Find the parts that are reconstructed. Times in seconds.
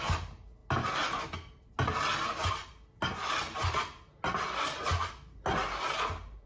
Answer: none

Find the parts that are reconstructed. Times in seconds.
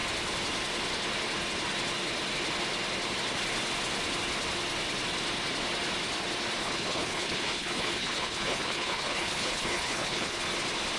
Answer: 6.6-10.4 (codec, HILCodec)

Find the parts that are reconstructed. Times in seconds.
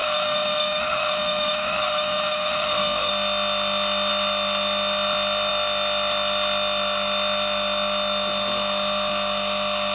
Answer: 0.0-3.1 (autoencoder, DAC-VAE)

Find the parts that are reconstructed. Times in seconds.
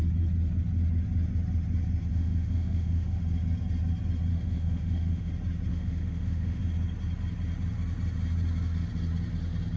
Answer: 2.1-3.2 (autoencoder, DAC-VAE); 4.3-5.3; 5.7-6.6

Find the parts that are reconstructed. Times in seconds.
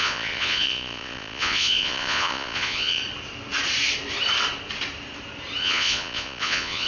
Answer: 0.0-3.0 (vocoder, Vocos); 5.6-6.9